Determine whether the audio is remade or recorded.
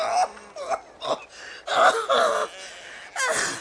recorded